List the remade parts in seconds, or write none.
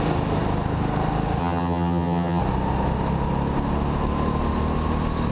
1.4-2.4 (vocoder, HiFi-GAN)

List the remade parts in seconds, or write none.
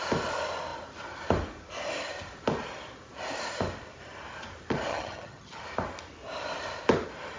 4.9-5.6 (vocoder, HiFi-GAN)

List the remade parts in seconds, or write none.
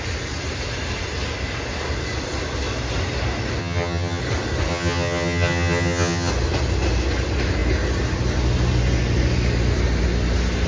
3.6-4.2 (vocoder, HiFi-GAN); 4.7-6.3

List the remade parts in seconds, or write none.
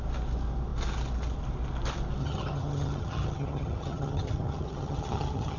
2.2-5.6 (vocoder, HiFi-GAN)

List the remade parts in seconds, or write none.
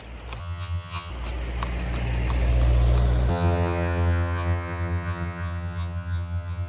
0.4-1.1 (vocoder, HiFi-GAN); 3.3-6.7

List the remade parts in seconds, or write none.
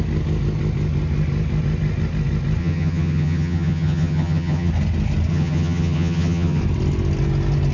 2.6-4.7 (vocoder, HiFi-GAN); 5.3-6.6